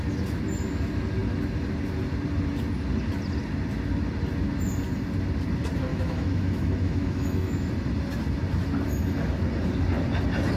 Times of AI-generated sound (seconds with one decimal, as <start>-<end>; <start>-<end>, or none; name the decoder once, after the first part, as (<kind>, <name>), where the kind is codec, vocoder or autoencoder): 5.9-7.7 (autoencoder, DAC-VAE)